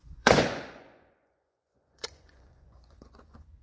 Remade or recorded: remade